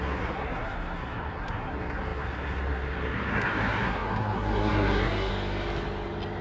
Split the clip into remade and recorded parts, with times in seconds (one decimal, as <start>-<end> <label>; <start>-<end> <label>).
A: 0.0-5.3 remade; 5.3-6.4 recorded